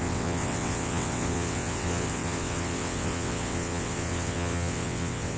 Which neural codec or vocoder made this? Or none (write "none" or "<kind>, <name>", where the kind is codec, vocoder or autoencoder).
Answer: vocoder, WaveNeXt